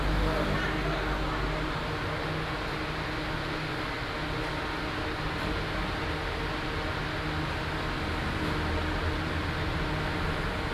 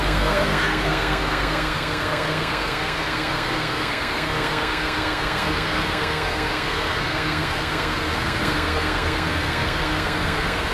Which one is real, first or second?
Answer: first